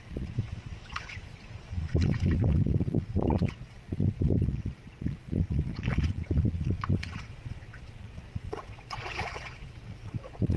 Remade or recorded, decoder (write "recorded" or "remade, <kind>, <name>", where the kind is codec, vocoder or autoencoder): remade, vocoder, Vocos